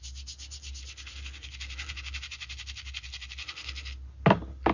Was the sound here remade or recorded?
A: recorded